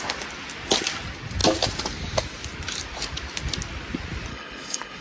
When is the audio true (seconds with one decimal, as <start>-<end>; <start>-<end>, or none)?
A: 0.0-4.3